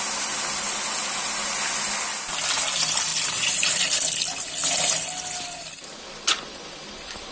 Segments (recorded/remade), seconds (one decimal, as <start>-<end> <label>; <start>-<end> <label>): 0.0-7.3 recorded